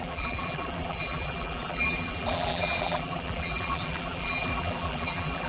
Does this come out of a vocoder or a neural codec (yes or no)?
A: yes